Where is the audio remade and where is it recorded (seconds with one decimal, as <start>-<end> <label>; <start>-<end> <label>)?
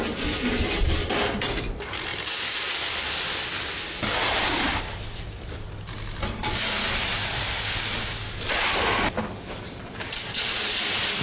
0.0-11.2 recorded